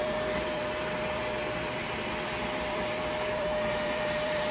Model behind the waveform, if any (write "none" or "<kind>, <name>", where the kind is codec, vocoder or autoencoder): vocoder, BigVGAN v2